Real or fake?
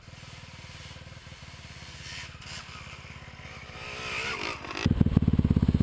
real